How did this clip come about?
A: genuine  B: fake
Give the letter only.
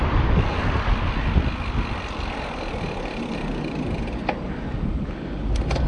A